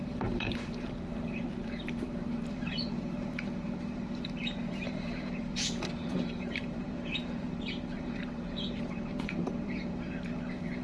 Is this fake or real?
fake